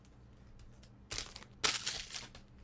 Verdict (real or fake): real